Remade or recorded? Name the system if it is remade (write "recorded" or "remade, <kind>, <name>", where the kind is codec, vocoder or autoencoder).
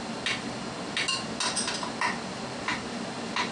recorded